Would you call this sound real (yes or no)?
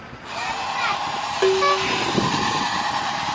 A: yes